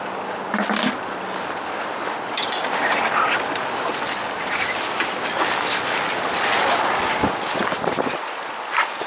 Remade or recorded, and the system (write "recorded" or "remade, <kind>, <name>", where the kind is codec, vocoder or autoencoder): recorded